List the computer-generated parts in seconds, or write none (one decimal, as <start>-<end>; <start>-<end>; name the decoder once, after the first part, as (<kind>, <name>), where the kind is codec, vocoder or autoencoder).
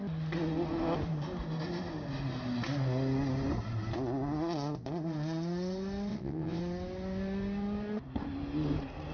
6.1-6.6 (vocoder, WaveNeXt)